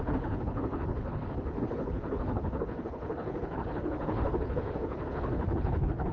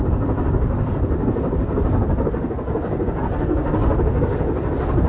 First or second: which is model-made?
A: first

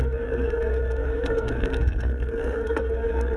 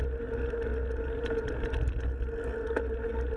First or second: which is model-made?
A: first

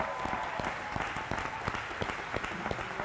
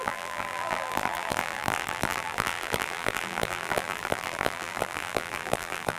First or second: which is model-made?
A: second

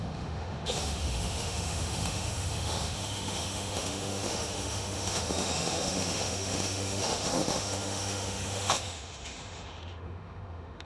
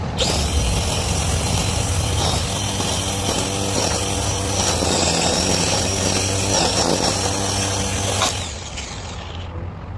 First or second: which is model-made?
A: first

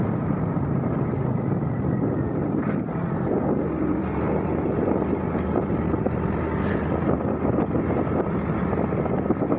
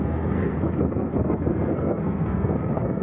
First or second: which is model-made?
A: second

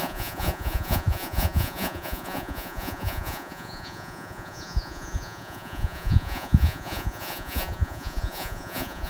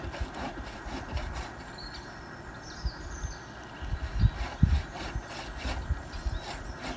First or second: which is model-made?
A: first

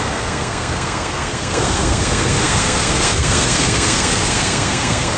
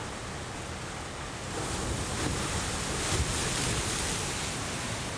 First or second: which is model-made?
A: first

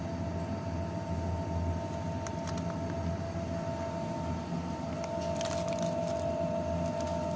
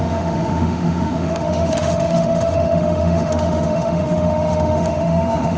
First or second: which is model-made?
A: second